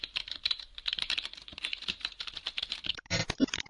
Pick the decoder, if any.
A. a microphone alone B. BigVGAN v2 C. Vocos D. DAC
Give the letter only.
B